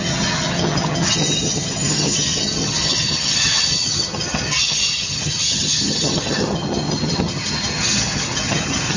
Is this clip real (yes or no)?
no